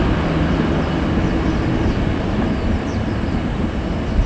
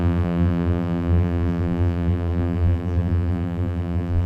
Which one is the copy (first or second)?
second